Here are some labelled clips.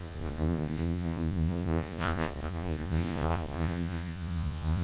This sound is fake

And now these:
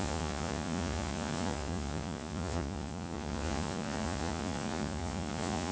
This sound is fake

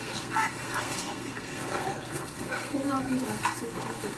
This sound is fake